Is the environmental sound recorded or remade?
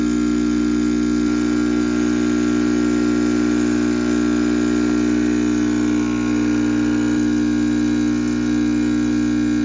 recorded